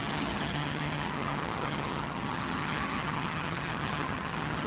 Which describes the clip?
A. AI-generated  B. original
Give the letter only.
A